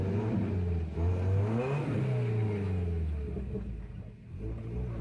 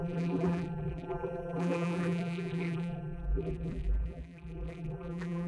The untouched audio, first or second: first